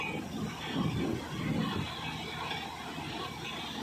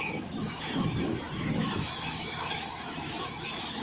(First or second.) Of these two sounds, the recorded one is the first